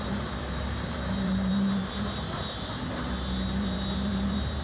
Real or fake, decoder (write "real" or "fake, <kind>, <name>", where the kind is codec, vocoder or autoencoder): fake, vocoder, BigVGAN v2